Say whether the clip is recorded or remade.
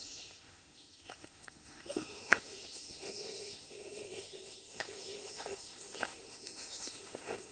remade